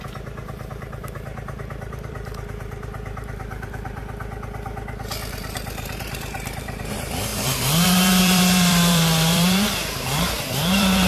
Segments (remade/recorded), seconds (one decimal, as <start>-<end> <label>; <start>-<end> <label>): 0.0-4.0 remade; 4.0-5.3 recorded; 5.3-11.1 remade